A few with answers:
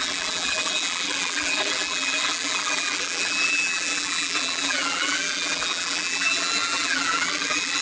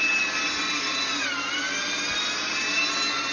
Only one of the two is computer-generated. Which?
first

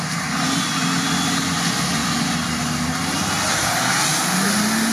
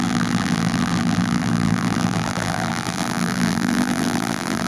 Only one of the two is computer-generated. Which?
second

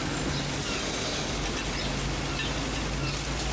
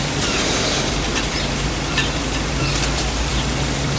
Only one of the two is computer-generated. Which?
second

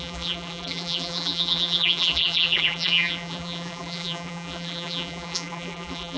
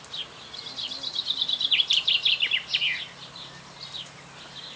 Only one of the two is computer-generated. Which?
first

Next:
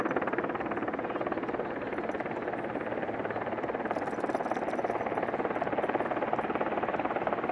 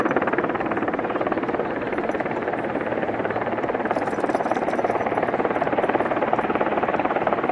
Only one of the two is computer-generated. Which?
second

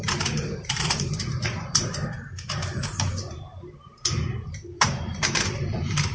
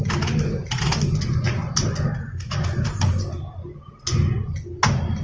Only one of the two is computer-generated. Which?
first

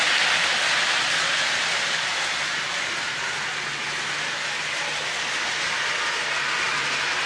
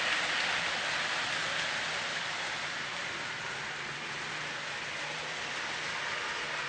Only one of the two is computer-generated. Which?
second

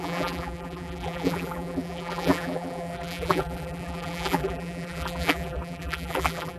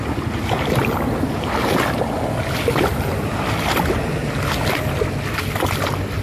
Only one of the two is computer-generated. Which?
first